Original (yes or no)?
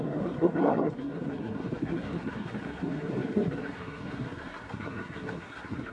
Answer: no